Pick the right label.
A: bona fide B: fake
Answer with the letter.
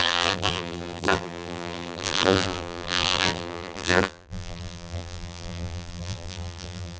B